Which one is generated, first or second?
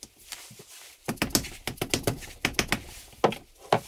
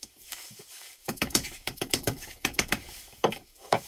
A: second